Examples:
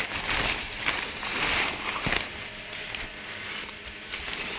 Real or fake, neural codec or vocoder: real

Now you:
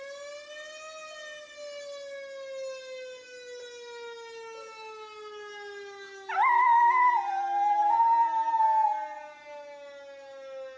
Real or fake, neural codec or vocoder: real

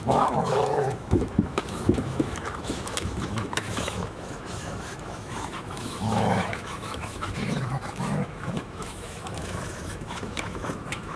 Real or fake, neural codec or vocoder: fake, autoencoder, DAC-VAE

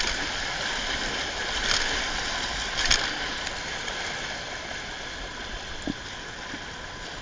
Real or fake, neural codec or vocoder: real